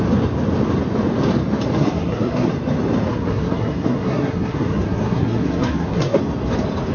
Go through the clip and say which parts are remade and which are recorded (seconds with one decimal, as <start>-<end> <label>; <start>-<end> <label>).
0.0-1.8 recorded; 1.8-2.5 remade; 2.5-3.1 recorded; 3.1-6.2 remade; 6.2-6.9 recorded